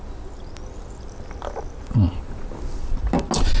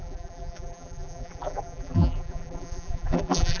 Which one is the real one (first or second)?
first